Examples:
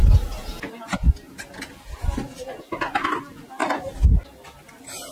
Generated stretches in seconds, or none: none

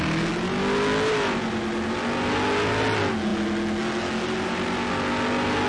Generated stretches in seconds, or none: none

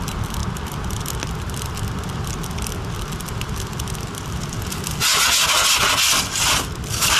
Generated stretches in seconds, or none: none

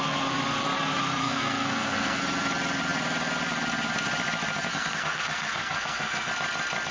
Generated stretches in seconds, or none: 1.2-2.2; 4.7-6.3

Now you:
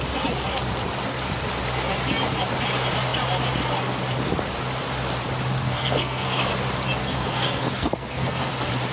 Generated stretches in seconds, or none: 5.6-6.5; 7.0-8.5